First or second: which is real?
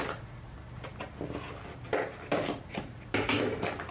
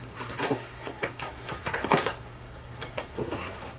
first